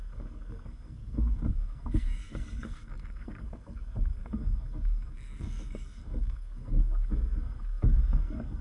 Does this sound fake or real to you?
fake